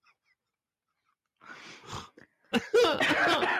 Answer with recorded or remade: recorded